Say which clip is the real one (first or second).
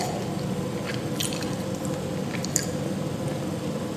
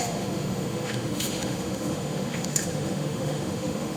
first